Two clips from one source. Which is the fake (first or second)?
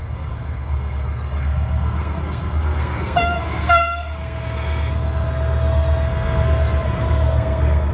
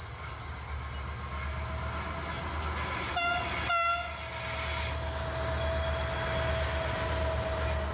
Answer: first